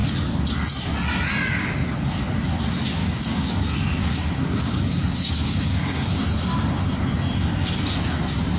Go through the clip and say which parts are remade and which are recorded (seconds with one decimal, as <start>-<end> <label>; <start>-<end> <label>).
0.0-3.0 recorded; 3.0-3.5 remade; 3.5-4.0 recorded; 4.0-6.2 remade; 6.2-8.6 recorded